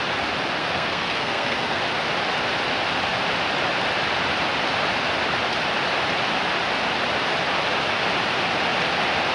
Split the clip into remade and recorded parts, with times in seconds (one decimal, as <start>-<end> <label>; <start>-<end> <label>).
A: 0.0-0.6 recorded; 0.6-1.8 remade; 1.8-9.3 recorded